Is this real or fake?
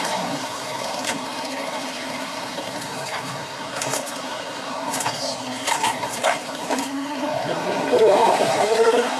fake